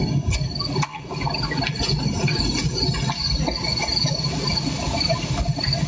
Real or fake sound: real